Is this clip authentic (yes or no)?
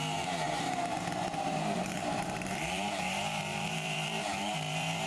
no